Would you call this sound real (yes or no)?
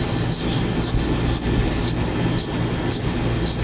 yes